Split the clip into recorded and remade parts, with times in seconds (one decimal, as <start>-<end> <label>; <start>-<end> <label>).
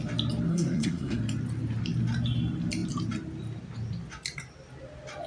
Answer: 0.0-0.5 recorded; 0.5-1.2 remade; 1.2-5.3 recorded